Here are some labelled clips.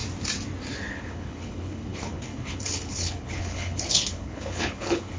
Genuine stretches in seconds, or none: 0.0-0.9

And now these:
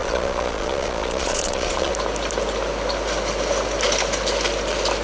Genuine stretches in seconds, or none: 1.9-5.0

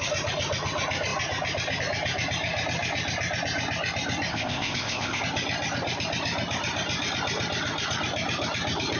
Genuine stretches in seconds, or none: 0.0-4.3; 5.2-9.0

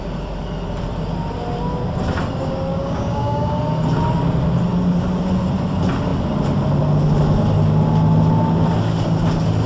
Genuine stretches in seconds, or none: 0.0-2.7; 3.6-9.7

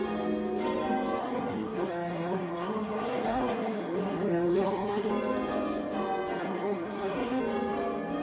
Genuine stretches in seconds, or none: 0.0-1.2; 5.1-6.4; 7.4-8.2

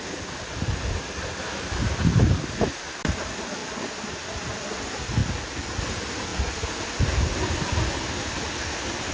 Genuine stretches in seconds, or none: none

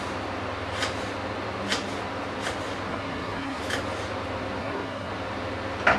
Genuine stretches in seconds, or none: 0.0-2.9; 3.6-4.6; 5.1-6.0